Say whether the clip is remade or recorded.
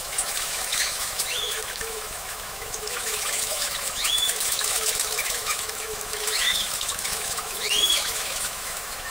remade